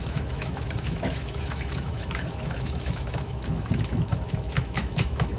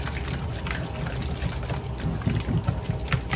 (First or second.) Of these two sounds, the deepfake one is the first